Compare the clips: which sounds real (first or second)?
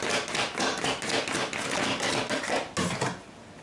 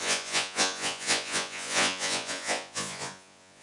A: first